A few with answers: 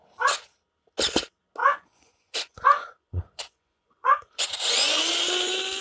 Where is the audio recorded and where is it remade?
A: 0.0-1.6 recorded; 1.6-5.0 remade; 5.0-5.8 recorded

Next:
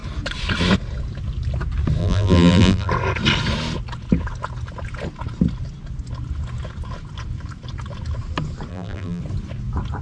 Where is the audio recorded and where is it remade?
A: 0.0-2.0 recorded; 2.0-2.9 remade; 2.9-8.7 recorded; 8.7-9.2 remade; 9.2-10.0 recorded

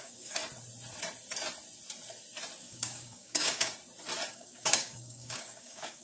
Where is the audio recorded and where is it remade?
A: 0.0-0.4 remade; 0.4-2.6 recorded; 2.6-3.7 remade; 3.7-4.3 recorded; 4.3-6.0 remade

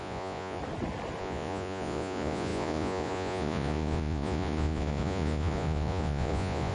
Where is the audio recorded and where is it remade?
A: 0.0-0.6 remade; 0.6-1.2 recorded; 1.2-6.7 remade

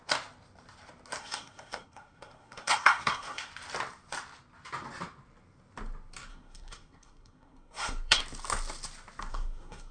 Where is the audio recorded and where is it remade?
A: 0.0-1.2 recorded; 1.2-3.5 remade; 3.5-6.3 recorded; 6.3-8.2 remade; 8.2-9.3 recorded; 9.3-9.9 remade

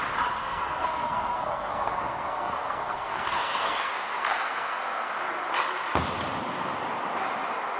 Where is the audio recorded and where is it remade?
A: 0.0-0.4 recorded; 0.4-5.1 remade; 5.1-7.8 recorded